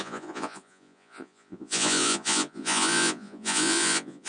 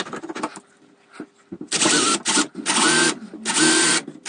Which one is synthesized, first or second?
first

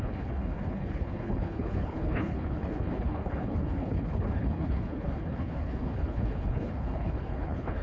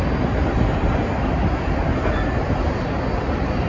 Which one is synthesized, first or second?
first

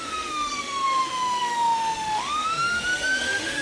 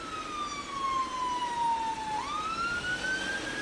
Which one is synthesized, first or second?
first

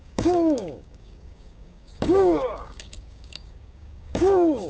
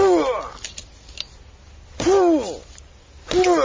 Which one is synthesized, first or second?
first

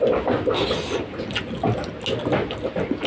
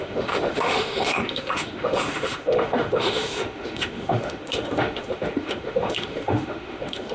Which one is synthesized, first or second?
second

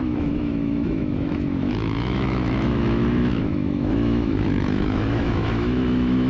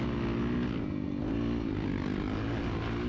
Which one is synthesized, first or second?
first